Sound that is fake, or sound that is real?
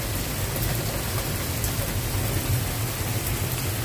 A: real